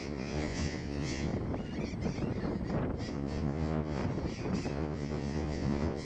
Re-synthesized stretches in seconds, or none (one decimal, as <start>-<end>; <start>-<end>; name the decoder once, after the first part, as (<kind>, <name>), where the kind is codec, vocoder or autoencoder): 0.0-1.3 (vocoder, Vocos); 3.1-4.0; 4.7-6.0